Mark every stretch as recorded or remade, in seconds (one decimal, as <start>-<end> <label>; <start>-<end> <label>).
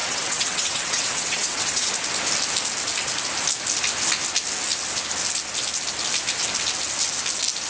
0.0-1.9 remade; 1.9-7.7 recorded